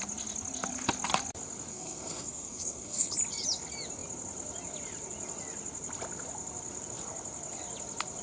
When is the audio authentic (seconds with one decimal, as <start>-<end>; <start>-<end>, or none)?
0.0-1.7; 3.1-8.2